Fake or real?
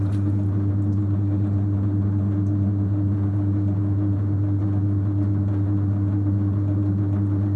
real